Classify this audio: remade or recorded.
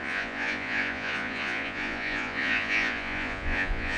remade